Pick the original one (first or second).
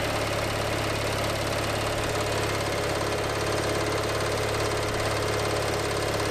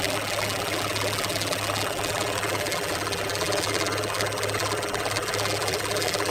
first